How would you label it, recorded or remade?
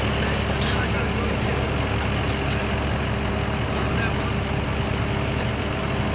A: recorded